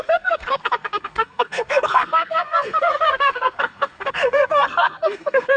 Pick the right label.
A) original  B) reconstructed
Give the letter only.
B